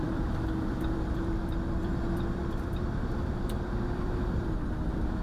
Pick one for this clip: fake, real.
fake